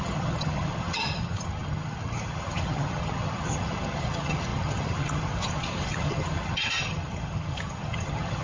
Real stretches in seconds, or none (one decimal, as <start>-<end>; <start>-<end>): none